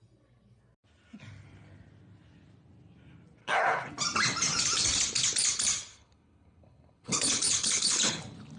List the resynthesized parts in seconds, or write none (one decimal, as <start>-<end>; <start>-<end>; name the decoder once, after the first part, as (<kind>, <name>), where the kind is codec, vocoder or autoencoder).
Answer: 3.4-3.9 (codec, HILCodec); 5.9-8.2